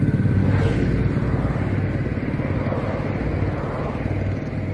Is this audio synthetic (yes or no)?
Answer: no